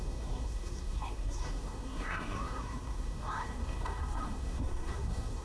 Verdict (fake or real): fake